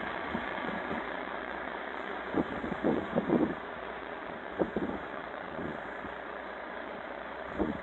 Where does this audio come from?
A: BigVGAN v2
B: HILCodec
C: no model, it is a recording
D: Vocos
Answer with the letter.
D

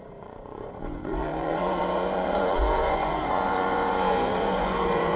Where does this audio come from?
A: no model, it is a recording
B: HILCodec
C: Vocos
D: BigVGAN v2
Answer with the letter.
C